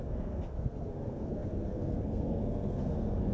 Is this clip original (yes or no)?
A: no